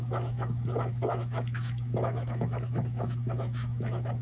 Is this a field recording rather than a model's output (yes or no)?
no